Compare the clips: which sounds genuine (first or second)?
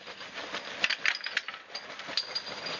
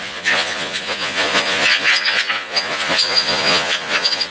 first